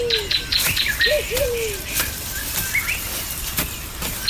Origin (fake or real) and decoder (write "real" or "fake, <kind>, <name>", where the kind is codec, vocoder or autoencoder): real